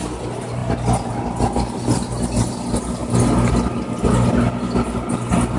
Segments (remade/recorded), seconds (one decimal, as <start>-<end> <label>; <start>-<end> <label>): 0.0-5.6 recorded